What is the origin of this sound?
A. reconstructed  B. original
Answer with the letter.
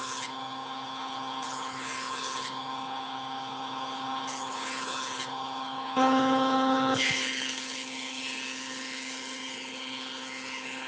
A